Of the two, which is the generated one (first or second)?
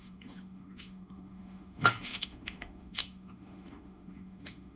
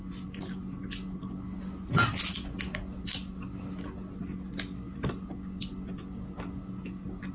first